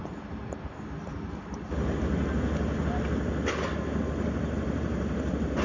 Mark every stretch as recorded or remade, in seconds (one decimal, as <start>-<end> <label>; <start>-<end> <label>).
0.0-5.6 recorded